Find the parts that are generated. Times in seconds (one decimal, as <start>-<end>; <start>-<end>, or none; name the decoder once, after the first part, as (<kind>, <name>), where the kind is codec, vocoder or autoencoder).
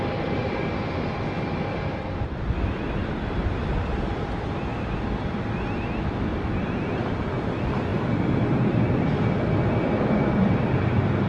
none